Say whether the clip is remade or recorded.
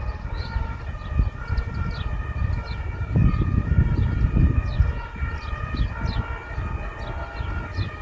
recorded